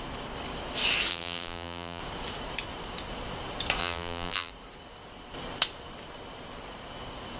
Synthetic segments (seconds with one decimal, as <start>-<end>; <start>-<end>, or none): 1.1-2.0; 3.8-4.5